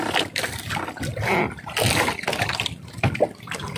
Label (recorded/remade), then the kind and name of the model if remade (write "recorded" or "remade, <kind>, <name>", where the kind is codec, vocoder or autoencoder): recorded